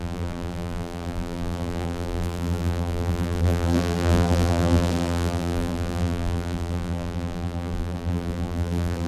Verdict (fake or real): fake